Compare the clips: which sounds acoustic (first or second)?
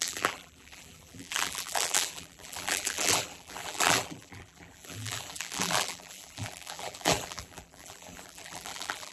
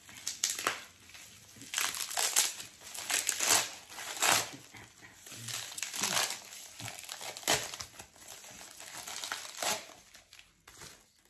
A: second